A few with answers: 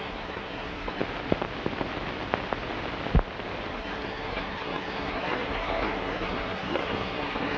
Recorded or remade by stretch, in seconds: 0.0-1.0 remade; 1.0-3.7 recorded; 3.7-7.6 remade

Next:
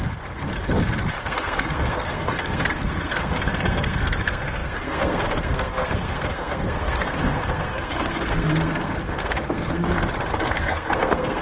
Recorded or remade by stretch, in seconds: 0.0-0.5 remade; 0.5-1.2 recorded; 1.2-9.8 remade; 9.8-10.5 recorded; 10.5-11.4 remade

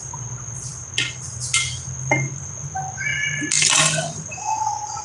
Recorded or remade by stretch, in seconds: 0.0-5.0 recorded

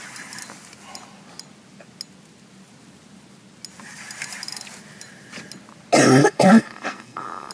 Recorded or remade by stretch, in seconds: 0.0-6.2 recorded; 6.2-7.5 remade

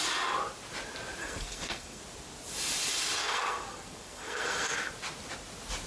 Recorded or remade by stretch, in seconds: 0.0-1.2 recorded; 1.2-2.0 remade; 2.0-3.2 recorded; 3.2-4.9 remade; 4.9-5.9 recorded

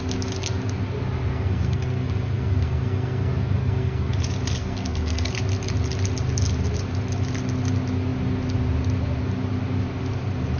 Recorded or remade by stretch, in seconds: 0.0-1.3 recorded; 1.3-4.1 remade; 4.1-4.6 recorded; 4.6-5.3 remade; 5.3-10.6 recorded

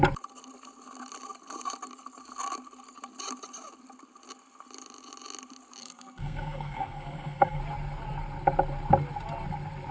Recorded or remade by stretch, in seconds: 0.0-5.8 recorded; 5.8-7.6 remade; 7.6-9.9 recorded